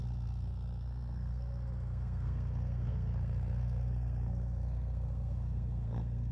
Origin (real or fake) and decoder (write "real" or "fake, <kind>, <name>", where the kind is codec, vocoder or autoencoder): fake, codec, SNAC